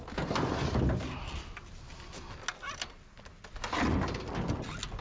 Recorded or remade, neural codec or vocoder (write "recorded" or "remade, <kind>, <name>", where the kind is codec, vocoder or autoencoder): recorded